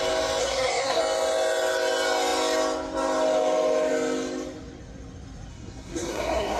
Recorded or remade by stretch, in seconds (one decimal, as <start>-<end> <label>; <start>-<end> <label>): 0.0-0.4 recorded; 0.4-1.0 remade; 1.0-5.5 recorded; 5.5-6.6 remade